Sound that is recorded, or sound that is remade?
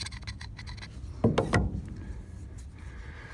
recorded